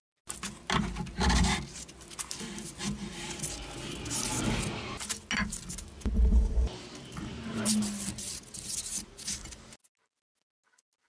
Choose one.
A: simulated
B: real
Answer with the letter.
B